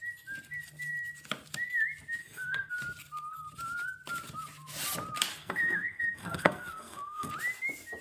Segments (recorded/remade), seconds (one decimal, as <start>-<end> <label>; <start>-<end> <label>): 0.0-2.2 recorded; 2.2-2.7 remade; 2.7-5.3 recorded; 5.3-7.3 remade; 7.3-8.0 recorded